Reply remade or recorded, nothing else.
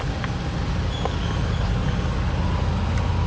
recorded